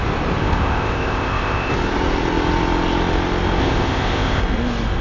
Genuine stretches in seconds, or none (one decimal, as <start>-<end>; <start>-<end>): 0.0-0.4; 1.7-3.6; 4.4-5.0